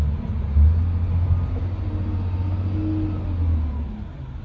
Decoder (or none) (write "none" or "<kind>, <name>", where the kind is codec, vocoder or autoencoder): none